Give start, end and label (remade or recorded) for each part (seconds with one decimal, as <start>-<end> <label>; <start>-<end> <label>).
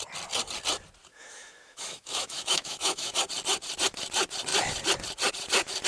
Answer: 0.0-1.1 recorded; 1.1-3.2 remade; 3.2-5.9 recorded